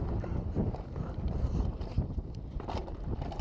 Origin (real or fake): fake